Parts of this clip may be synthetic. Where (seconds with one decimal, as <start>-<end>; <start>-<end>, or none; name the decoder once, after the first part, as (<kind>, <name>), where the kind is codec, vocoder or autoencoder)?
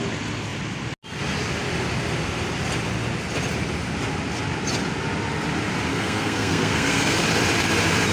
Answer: 5.9-7.2 (codec, SNAC)